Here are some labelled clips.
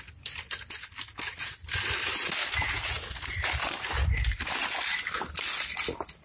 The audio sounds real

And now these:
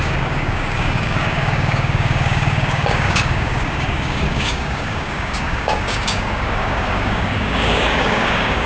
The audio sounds fake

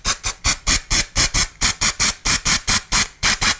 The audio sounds fake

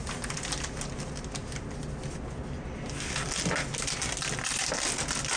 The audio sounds real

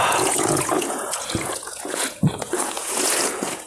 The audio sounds fake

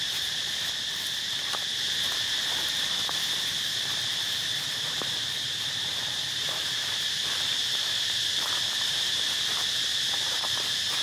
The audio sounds fake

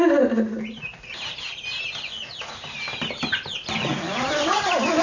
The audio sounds real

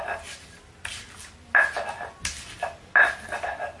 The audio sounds real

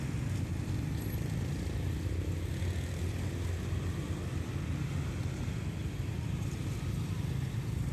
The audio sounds real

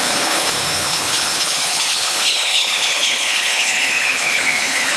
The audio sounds fake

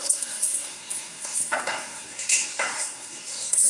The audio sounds fake